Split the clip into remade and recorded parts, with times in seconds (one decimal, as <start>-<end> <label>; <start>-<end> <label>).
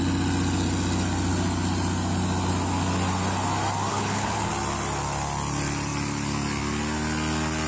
0.0-3.9 recorded; 3.9-4.5 remade; 4.5-7.7 recorded